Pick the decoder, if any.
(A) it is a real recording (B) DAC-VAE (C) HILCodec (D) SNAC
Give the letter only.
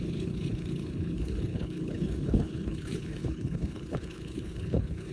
C